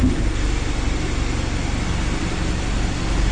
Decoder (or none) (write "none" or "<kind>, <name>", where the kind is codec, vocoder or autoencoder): none